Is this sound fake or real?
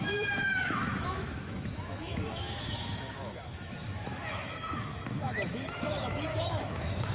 fake